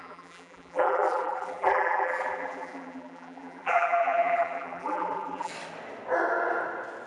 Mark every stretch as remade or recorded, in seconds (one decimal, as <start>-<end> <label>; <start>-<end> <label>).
0.0-5.5 remade; 5.5-7.1 recorded